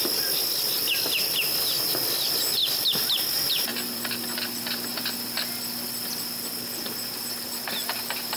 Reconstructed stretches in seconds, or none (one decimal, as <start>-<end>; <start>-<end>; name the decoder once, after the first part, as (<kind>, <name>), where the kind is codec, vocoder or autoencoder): 3.7-4.4 (vocoder, BigVGAN v2)